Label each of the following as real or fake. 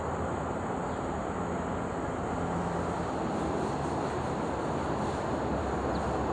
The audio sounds real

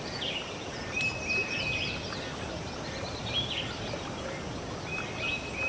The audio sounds real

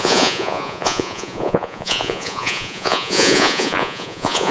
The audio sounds fake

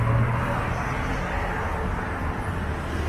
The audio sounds real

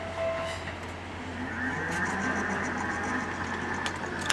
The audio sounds real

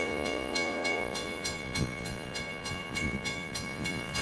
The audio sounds fake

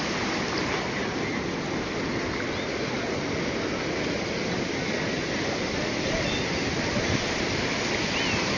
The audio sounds real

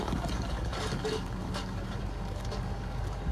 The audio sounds fake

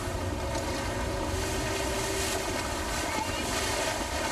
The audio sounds real